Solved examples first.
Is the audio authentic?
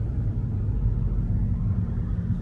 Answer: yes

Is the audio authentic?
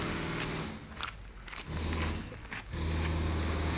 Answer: yes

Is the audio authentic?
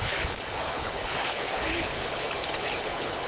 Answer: no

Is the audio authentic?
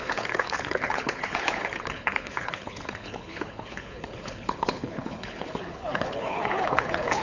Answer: no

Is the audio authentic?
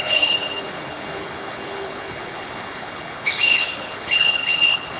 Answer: no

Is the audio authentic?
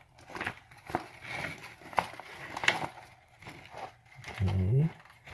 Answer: yes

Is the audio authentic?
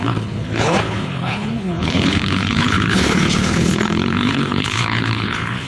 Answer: no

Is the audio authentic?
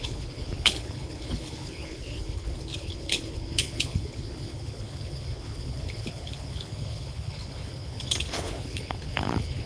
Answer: no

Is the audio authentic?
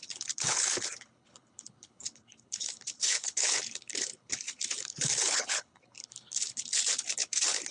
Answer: no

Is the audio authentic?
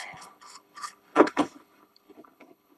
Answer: no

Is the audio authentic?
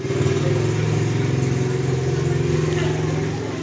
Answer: yes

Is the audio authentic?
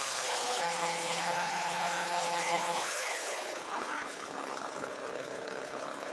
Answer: no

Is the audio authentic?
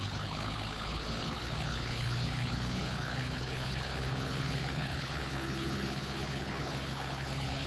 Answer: no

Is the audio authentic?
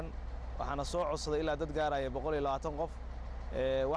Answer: yes